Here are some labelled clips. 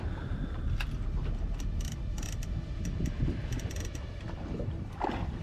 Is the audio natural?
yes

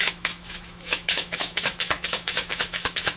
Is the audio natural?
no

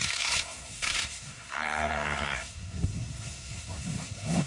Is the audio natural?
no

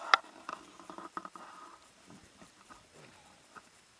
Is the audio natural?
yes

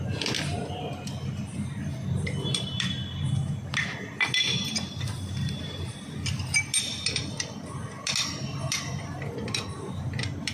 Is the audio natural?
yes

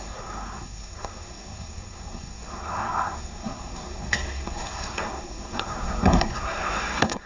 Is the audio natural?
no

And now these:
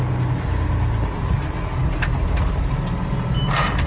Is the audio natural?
yes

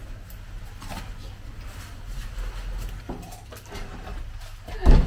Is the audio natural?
yes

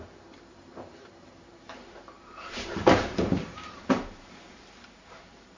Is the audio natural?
no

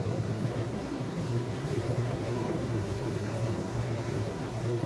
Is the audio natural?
no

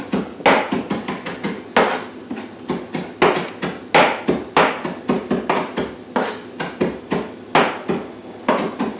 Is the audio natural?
yes